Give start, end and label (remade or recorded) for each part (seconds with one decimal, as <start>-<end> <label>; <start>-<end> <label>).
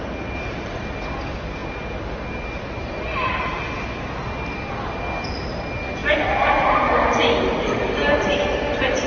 0.0-9.1 recorded